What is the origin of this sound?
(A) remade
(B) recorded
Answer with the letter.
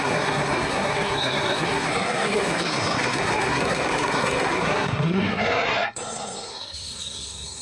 A